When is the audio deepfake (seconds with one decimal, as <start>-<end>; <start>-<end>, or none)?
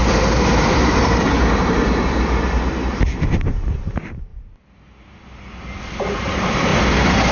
0.0-4.3; 6.2-6.7